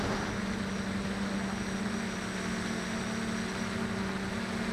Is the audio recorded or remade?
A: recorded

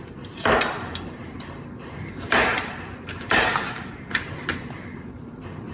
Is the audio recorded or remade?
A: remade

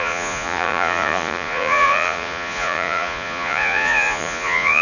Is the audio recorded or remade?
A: remade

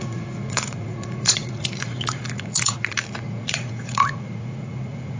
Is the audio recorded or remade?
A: remade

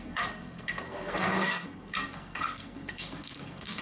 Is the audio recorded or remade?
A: remade